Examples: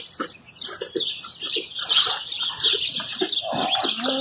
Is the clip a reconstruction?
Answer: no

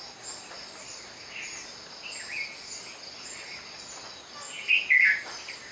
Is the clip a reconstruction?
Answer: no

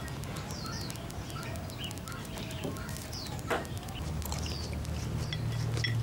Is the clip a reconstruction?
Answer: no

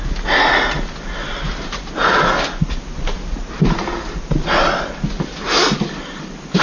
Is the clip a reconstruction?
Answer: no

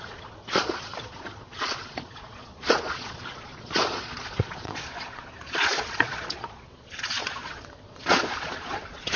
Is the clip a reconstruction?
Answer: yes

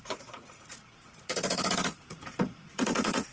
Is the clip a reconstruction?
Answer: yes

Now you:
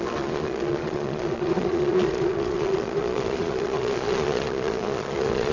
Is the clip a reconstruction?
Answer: yes